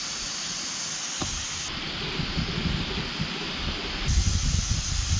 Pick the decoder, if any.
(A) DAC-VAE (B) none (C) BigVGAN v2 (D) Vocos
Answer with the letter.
B